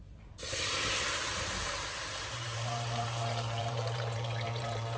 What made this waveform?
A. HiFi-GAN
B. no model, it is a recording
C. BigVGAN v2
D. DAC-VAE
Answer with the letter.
C